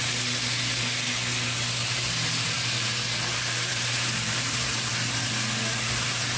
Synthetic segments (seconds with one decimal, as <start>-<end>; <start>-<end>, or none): 1.8-3.0; 3.7-4.9